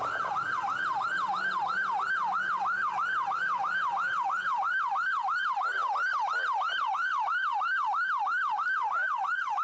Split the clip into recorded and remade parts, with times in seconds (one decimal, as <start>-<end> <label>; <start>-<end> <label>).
0.0-5.8 remade; 5.8-8.4 recorded; 8.4-9.6 remade